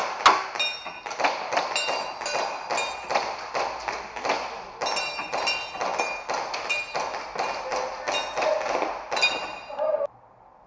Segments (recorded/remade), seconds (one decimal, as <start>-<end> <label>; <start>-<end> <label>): 0.0-10.7 recorded